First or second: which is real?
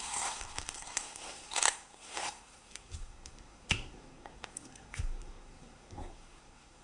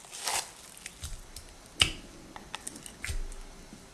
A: second